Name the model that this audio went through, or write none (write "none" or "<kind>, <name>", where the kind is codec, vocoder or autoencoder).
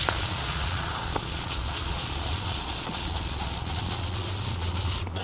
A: vocoder, Vocos